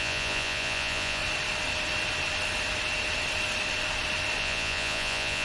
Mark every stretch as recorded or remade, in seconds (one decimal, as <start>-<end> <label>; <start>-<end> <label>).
0.0-1.2 remade; 1.2-4.4 recorded; 4.4-5.4 remade